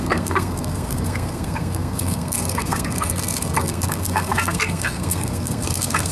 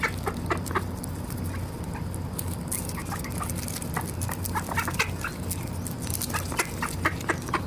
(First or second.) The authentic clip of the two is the second